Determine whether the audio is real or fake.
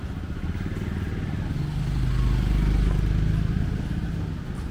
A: real